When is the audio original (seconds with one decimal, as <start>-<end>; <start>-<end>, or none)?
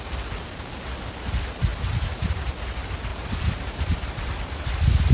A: 0.0-1.7; 2.5-3.1